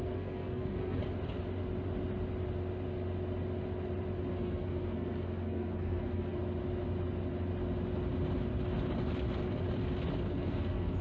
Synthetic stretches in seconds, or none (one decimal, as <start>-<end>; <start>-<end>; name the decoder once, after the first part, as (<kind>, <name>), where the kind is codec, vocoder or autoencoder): 0.0-1.0 (codec, SNAC); 4.3-6.4; 10.3-11.0